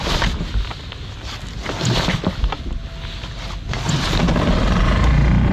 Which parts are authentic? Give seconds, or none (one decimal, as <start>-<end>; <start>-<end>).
0.7-2.2; 2.8-4.0